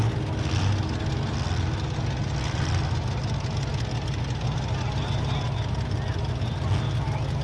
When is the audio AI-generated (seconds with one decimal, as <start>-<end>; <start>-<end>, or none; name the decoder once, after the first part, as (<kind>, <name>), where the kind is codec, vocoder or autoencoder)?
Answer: none